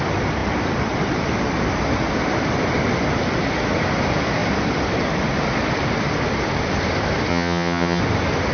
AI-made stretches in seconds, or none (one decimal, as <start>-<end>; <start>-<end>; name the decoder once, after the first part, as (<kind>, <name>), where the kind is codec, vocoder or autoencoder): 7.3-8.0 (vocoder, HiFi-GAN)